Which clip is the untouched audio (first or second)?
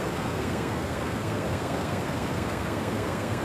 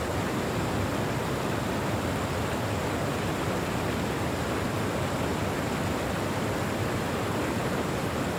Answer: second